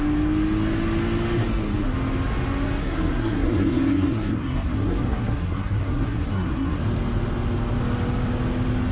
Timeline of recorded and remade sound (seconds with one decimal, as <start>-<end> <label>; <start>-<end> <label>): 0.0-2.8 recorded; 2.8-6.8 remade; 6.8-8.9 recorded